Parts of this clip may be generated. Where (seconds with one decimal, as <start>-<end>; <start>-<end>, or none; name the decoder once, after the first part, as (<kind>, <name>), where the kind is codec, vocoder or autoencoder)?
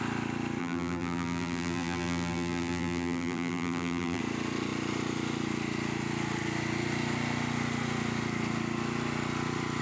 0.6-4.2 (vocoder, BigVGAN v2)